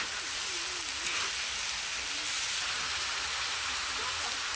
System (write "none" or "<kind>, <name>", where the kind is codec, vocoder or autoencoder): none